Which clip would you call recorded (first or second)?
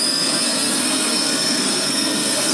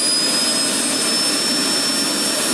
second